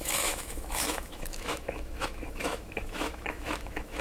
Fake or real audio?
fake